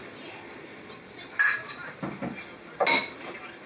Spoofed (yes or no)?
no